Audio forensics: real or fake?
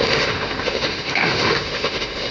fake